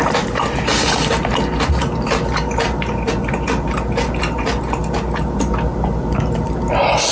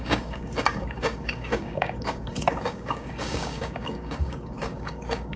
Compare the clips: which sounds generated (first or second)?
second